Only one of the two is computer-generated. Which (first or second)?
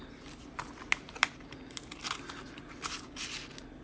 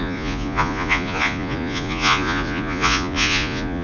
second